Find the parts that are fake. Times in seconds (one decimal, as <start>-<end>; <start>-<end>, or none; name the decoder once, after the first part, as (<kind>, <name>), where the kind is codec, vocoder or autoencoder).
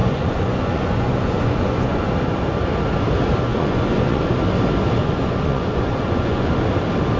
0.0-2.1 (vocoder, Vocos); 3.5-4.3; 5.0-6.7